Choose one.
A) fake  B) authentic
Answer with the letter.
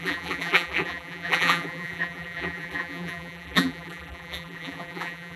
A